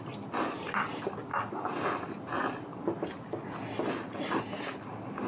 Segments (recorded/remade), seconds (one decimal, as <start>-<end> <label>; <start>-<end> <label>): 0.0-5.3 recorded